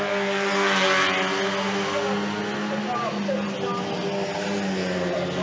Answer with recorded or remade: recorded